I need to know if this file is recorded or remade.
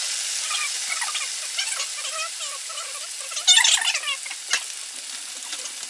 recorded